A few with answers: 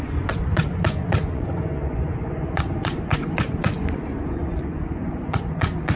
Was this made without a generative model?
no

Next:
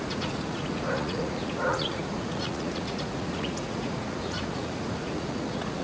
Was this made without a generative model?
no